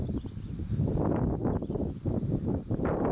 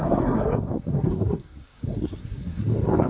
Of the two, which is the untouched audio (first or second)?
first